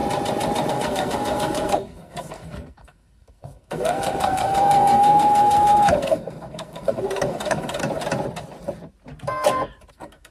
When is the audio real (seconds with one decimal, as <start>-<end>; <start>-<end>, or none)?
0.0-0.7; 7.8-9.9